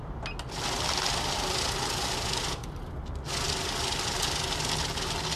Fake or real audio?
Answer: real